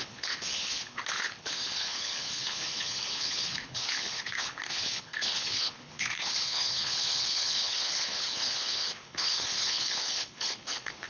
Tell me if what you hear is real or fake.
fake